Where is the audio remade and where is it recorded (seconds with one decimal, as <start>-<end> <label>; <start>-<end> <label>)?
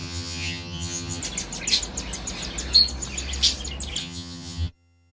0.0-1.2 remade; 1.2-4.0 recorded; 4.0-5.1 remade